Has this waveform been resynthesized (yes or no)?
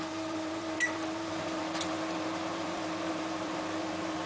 yes